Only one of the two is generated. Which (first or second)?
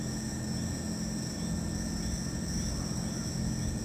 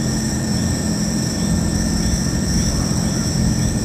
second